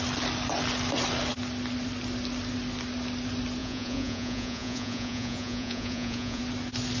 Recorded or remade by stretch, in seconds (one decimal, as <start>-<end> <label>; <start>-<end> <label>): 0.0-3.6 recorded; 3.6-6.4 remade; 6.4-7.0 recorded